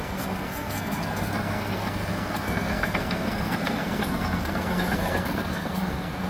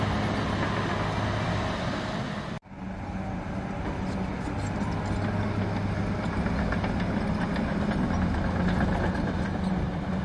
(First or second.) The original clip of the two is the second